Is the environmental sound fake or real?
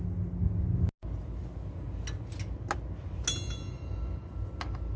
real